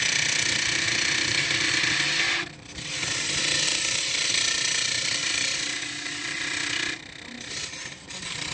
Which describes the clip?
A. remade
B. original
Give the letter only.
B